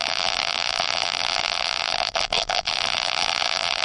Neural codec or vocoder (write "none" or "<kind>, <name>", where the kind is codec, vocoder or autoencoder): vocoder, BigVGAN v2